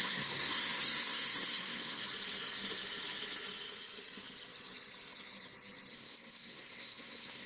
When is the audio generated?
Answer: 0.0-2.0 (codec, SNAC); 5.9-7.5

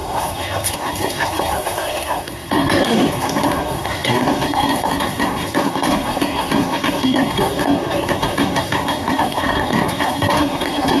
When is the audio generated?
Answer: 0.0-11.0 (codec, SNAC)

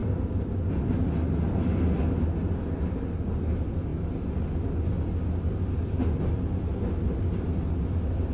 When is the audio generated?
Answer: none

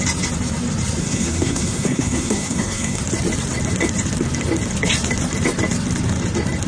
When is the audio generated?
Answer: 1.0-3.0 (codec, SNAC)

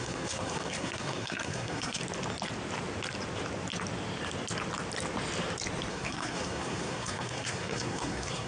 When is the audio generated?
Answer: 0.0-2.0 (codec, SNAC); 5.9-8.5

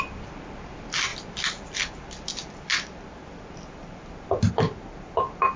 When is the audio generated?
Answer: none

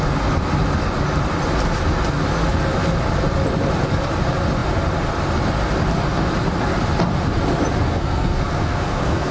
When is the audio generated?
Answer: 7.9-9.3 (codec, SNAC)